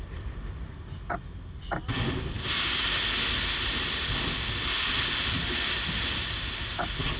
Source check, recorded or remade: recorded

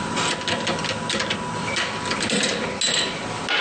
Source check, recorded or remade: recorded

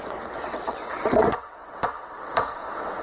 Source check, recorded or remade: remade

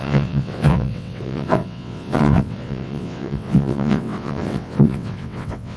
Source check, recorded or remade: remade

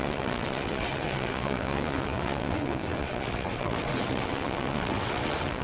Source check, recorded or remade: remade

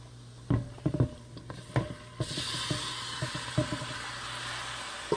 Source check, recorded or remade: recorded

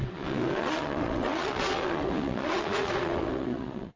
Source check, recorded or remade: remade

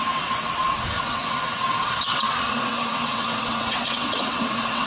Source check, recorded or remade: remade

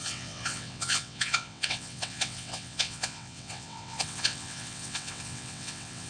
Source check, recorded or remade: remade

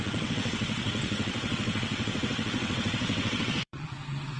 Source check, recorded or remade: remade